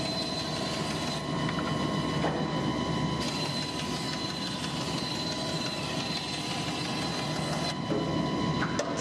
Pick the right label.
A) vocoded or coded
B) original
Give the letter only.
B